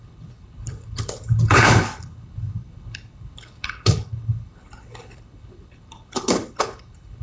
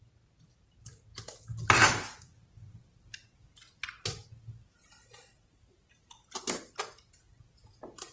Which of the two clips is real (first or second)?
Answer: second